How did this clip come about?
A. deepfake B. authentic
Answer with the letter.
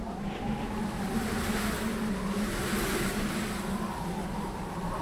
B